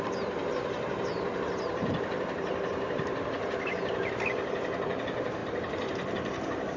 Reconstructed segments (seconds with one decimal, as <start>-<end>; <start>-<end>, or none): 0.0-6.8